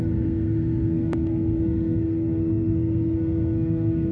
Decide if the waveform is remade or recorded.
remade